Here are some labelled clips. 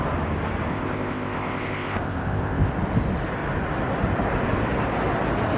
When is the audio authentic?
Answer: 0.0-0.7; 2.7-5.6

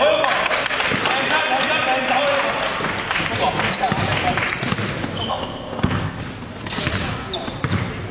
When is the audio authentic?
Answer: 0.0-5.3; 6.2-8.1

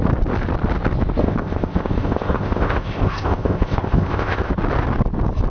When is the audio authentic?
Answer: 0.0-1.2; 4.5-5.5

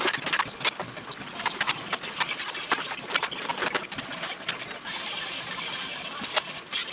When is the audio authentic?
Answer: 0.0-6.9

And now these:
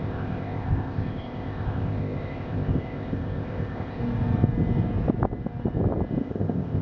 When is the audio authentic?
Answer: 4.0-6.2

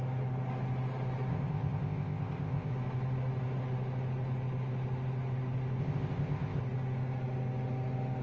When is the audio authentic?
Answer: 0.0-1.3; 2.7-5.8; 6.6-8.2

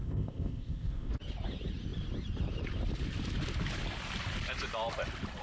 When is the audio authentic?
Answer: 1.1-5.4

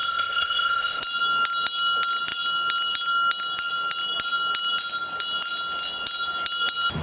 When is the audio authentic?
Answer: 1.0-7.0